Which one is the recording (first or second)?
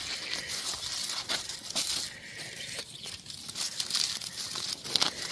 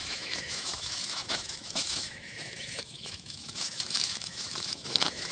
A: first